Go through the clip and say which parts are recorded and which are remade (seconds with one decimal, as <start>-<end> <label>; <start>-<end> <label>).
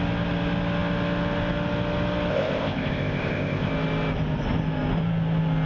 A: 0.0-2.3 recorded; 2.3-3.7 remade; 3.7-5.7 recorded